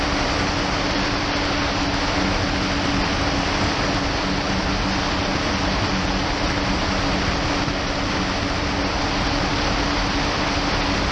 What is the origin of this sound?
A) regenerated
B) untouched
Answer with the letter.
B